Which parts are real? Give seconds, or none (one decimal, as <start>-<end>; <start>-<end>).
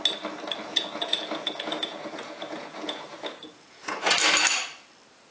0.0-0.7; 3.9-5.3